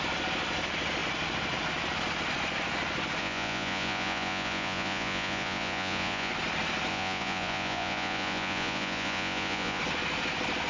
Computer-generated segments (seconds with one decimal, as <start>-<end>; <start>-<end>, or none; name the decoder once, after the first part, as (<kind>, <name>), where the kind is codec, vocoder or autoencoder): 3.2-6.3 (vocoder, Vocos); 6.9-9.8